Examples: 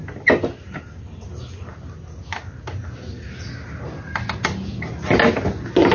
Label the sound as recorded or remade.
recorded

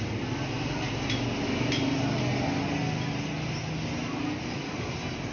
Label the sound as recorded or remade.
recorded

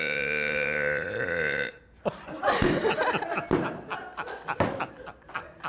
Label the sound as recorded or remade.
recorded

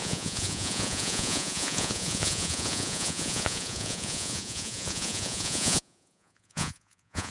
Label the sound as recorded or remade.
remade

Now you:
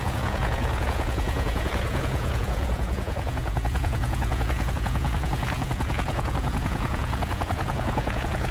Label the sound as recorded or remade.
remade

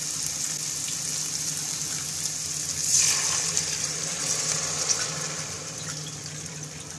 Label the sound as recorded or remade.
recorded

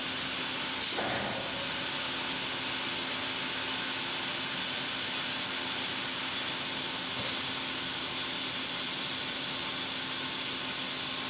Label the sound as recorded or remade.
recorded